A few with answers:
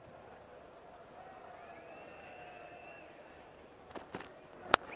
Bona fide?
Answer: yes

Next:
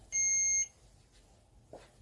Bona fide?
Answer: yes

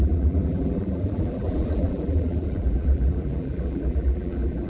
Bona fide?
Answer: no